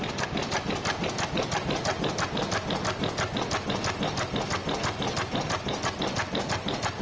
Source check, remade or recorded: recorded